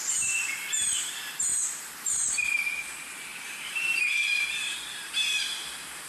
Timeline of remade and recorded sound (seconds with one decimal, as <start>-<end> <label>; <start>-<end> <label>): 0.0-1.5 remade; 1.5-2.0 recorded; 2.0-6.1 remade